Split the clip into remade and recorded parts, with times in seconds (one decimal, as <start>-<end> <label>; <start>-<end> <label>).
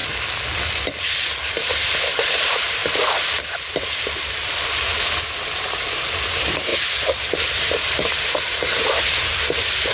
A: 0.0-1.5 recorded; 1.5-9.9 remade